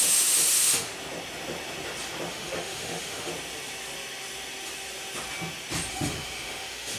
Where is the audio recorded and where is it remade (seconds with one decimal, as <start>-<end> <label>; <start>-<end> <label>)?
0.0-0.9 remade; 0.9-2.3 recorded; 2.3-3.3 remade; 3.3-5.9 recorded; 5.9-7.0 remade